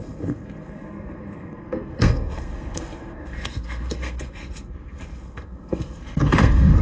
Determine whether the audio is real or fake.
fake